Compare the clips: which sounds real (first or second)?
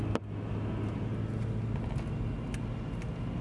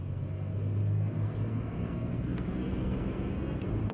first